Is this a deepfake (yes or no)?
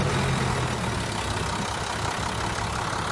no